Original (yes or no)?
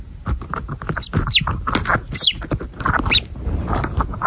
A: yes